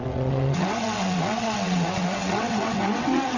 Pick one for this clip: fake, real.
fake